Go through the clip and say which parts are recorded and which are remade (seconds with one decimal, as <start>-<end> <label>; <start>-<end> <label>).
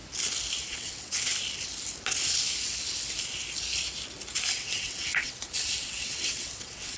0.0-0.7 recorded; 0.7-1.3 remade; 1.3-4.5 recorded; 4.5-7.0 remade